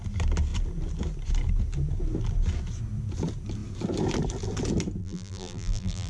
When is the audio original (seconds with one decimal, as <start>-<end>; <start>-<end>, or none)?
0.0-5.0